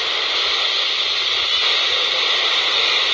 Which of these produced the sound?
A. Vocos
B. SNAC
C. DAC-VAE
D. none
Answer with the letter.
D